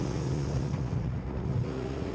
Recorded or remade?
remade